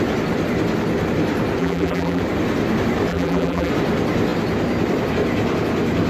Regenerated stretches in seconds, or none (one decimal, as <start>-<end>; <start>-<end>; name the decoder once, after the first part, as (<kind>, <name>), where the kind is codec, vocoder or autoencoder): 1.6-2.2 (vocoder, BigVGAN v2); 3.1-3.7